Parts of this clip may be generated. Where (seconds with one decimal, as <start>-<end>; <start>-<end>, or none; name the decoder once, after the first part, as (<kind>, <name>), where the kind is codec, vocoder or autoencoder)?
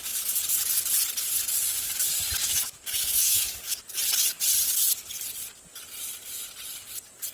2.4-3.6 (autoencoder, DAC-VAE)